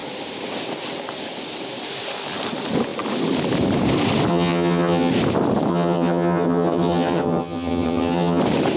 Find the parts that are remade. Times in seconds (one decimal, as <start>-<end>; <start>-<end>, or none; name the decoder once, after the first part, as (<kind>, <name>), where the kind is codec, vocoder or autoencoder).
4.3-5.1 (vocoder, HiFi-GAN); 5.7-8.4